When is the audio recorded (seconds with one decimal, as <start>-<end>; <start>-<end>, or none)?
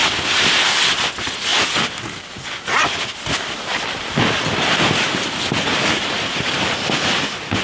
0.0-7.6